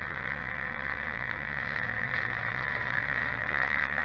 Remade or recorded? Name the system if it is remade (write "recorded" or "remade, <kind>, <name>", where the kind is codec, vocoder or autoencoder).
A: remade, vocoder, WaveNeXt